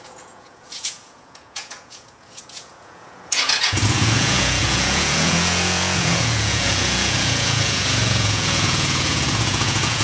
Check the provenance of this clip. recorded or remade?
remade